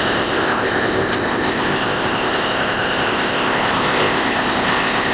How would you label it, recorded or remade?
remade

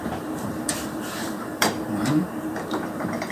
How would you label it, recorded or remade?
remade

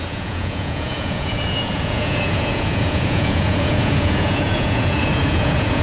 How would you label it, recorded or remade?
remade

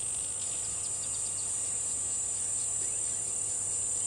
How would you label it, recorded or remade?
recorded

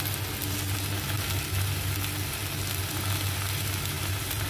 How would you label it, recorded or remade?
recorded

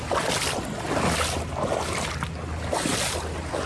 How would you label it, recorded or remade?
recorded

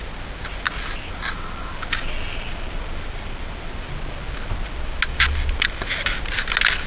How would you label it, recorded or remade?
recorded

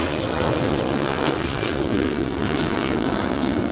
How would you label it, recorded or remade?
remade